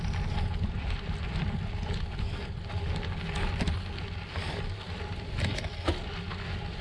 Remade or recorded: recorded